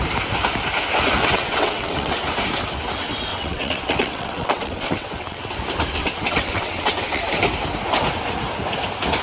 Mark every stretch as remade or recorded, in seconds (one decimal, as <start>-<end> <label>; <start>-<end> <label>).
0.0-1.2 recorded; 1.2-2.1 remade; 2.1-3.3 recorded; 3.3-5.5 remade; 5.5-6.0 recorded; 6.0-7.2 remade; 7.2-9.2 recorded